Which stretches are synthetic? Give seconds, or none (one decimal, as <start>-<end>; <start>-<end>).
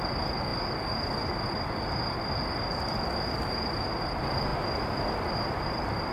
none